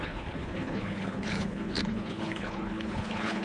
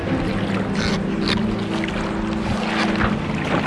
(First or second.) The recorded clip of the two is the second